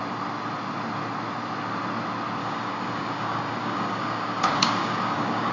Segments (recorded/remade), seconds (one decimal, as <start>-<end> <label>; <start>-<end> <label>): 0.0-2.4 recorded; 2.4-5.5 remade